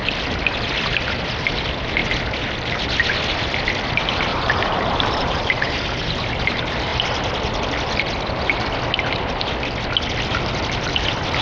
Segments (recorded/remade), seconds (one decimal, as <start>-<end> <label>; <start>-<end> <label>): 0.0-4.3 recorded; 4.3-5.7 remade; 5.7-11.4 recorded